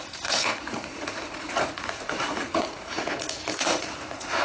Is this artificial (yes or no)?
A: yes